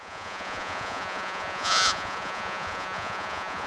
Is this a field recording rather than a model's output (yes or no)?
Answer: no